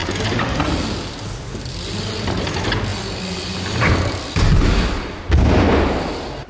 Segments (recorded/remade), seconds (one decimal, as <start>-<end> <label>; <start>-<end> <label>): 0.0-6.5 recorded